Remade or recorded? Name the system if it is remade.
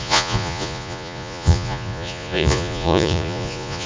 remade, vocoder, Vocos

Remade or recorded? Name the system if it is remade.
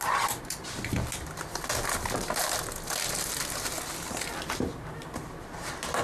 recorded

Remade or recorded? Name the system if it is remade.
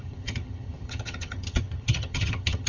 remade, vocoder, HiFi-GAN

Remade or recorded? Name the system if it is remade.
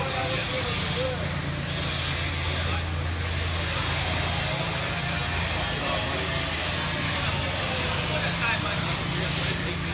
recorded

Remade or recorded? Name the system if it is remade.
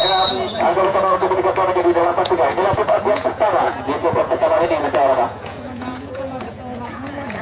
remade, vocoder, Vocos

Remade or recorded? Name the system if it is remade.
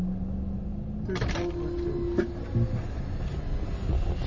recorded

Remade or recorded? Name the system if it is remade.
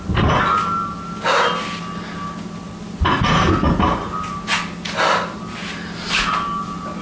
recorded